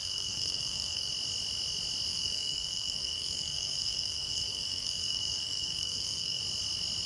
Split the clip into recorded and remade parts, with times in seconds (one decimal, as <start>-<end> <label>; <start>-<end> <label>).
0.0-1.1 remade; 1.1-2.1 recorded; 2.1-6.4 remade; 6.4-7.1 recorded